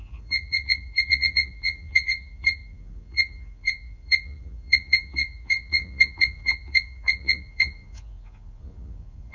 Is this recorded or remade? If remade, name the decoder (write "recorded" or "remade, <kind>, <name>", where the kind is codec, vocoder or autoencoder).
remade, vocoder, Vocos